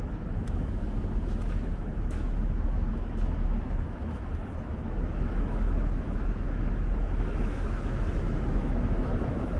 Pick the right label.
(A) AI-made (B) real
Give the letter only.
A